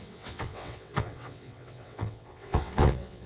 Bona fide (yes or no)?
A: no